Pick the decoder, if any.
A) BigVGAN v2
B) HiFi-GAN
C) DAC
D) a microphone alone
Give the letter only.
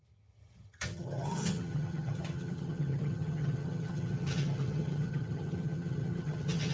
B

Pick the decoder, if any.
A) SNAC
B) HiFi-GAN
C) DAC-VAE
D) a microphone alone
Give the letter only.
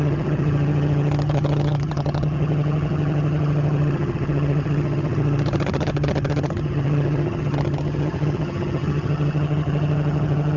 B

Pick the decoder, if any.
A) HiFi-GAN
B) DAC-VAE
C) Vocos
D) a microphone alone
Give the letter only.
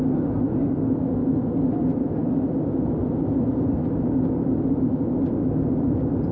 D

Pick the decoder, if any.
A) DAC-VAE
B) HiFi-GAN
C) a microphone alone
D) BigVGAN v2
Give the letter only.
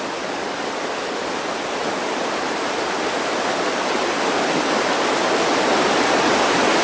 C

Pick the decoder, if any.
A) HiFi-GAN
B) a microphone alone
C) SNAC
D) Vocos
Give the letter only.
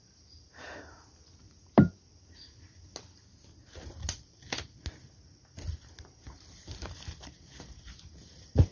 B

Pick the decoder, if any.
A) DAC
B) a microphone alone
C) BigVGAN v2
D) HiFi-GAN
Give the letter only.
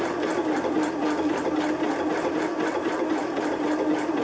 B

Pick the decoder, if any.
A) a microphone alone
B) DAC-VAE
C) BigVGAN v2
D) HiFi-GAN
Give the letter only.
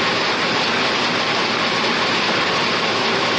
A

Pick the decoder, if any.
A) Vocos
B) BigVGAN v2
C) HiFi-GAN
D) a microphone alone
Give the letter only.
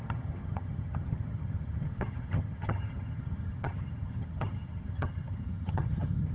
C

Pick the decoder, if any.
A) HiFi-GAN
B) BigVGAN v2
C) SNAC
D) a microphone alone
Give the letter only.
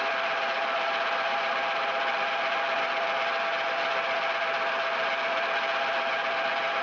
D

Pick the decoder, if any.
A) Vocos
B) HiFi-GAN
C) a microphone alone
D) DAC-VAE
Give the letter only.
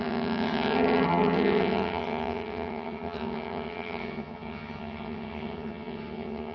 B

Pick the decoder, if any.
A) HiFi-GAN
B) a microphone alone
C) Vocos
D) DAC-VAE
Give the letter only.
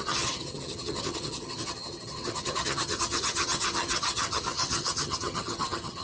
A